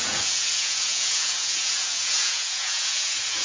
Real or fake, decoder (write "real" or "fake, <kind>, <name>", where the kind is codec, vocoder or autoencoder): fake, vocoder, Vocos